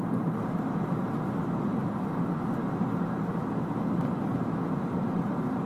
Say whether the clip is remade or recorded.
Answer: recorded